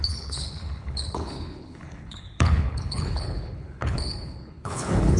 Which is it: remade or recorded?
remade